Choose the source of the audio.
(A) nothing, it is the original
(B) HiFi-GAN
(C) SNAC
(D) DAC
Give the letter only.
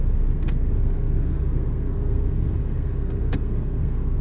C